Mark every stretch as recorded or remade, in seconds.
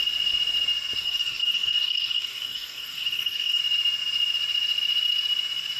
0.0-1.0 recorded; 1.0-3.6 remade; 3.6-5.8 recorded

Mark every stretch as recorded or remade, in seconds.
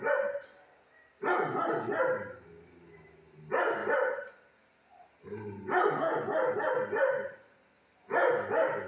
0.0-8.9 recorded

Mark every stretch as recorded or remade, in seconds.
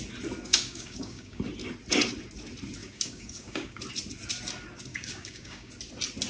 0.0-0.5 recorded; 0.5-1.4 remade; 1.4-2.8 recorded; 2.8-3.8 remade; 3.8-4.9 recorded; 4.9-5.7 remade; 5.7-6.3 recorded